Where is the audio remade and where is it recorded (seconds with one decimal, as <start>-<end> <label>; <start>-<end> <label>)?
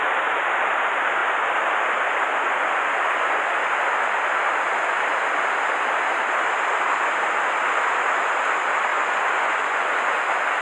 0.0-2.3 recorded; 2.3-3.4 remade; 3.4-8.9 recorded; 8.9-10.2 remade; 10.2-10.6 recorded